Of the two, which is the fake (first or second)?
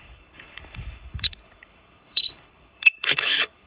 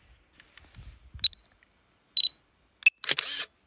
first